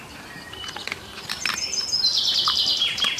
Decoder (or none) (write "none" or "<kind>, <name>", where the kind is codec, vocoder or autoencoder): vocoder, BigVGAN v2